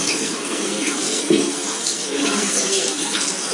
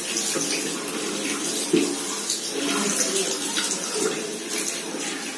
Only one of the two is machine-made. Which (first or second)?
first